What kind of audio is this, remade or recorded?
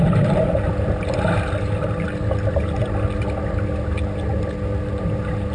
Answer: recorded